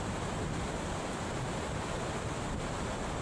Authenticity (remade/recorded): recorded